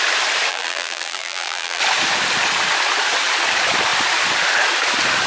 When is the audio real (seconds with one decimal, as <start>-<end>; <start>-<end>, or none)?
0.0-0.5; 1.8-5.3

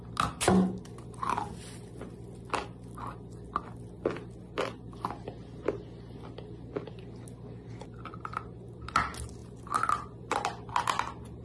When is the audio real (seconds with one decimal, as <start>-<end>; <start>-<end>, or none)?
0.0-11.4

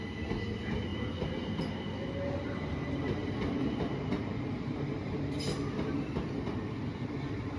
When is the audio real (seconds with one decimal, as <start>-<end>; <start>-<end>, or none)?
0.0-0.9; 1.6-3.2; 5.4-7.6

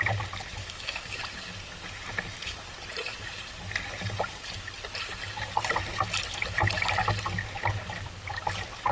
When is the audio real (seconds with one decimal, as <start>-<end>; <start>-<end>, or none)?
0.0-0.6; 1.2-8.9

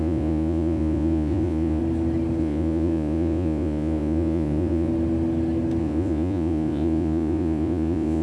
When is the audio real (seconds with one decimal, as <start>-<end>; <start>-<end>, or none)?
1.8-2.4; 4.9-5.8

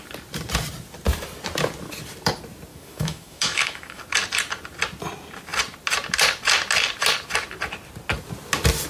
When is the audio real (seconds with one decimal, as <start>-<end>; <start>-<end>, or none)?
0.0-2.7; 4.0-8.9